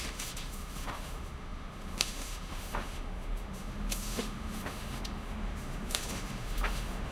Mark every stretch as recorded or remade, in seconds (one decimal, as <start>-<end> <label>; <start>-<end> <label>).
0.0-7.1 remade